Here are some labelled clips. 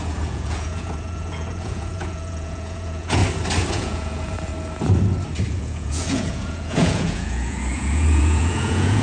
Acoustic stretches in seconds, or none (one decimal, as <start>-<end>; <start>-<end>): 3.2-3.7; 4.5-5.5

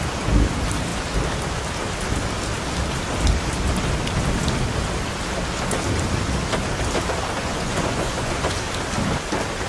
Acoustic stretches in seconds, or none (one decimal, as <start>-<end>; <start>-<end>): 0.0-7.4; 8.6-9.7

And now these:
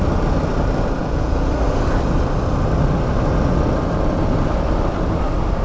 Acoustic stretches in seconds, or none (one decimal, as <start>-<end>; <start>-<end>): 0.0-1.0; 1.5-5.6

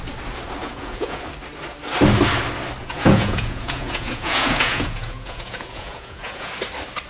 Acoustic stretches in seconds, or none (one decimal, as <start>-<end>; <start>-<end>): 0.0-0.6; 1.2-2.8; 6.5-7.1